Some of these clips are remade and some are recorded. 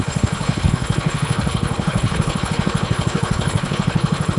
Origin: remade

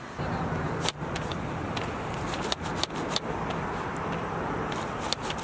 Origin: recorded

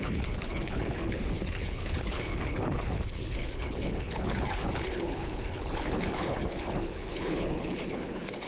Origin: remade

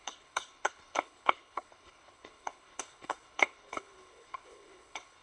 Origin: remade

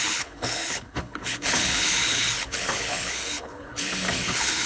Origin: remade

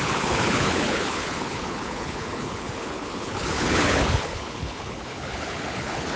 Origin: remade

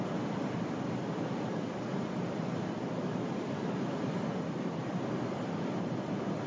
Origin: recorded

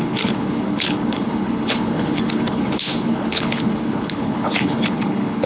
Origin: remade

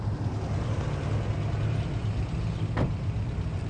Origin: recorded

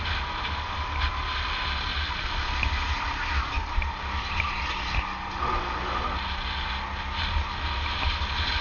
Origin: recorded